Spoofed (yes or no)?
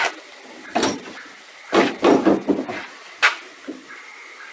no